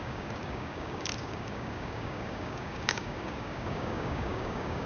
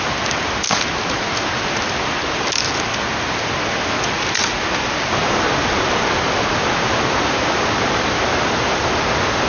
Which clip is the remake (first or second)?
first